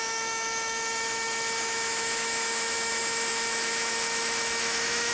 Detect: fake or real fake